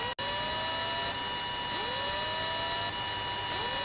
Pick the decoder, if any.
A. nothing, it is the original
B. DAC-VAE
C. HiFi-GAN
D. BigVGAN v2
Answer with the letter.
A